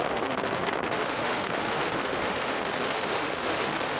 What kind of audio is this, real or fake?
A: fake